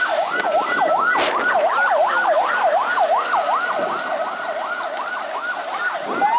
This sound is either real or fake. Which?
real